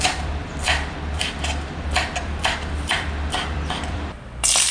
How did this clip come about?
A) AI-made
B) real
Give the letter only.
A